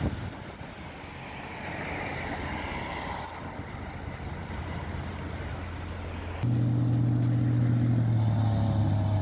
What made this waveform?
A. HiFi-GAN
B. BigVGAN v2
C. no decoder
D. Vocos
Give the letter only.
C